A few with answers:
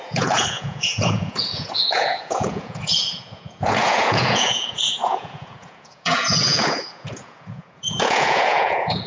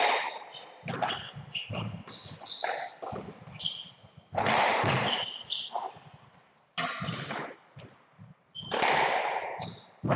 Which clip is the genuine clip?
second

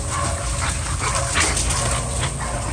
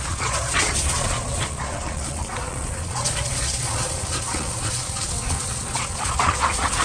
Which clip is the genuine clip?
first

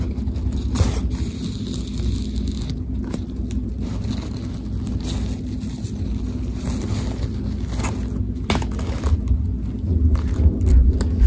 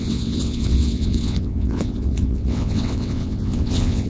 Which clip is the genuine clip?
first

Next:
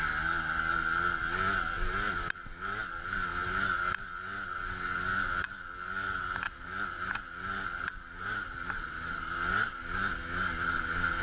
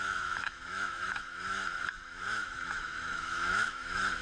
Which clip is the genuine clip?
first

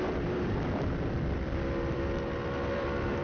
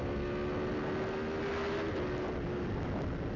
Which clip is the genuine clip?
second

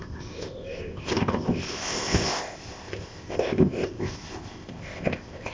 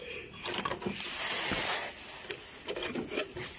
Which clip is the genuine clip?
second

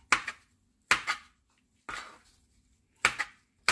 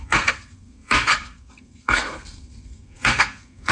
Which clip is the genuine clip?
first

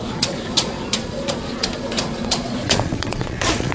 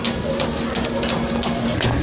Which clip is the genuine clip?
second